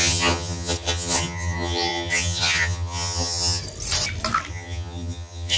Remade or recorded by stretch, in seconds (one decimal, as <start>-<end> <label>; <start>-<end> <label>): 0.0-3.6 remade; 3.6-4.5 recorded; 4.5-5.6 remade